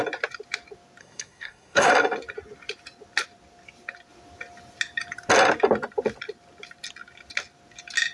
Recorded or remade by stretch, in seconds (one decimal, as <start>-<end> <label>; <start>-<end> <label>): 0.0-1.0 recorded; 1.0-1.9 remade; 1.9-8.1 recorded

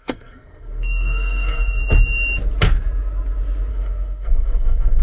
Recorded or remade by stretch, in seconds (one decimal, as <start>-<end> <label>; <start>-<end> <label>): 0.0-1.8 remade; 1.8-3.7 recorded; 3.7-5.0 remade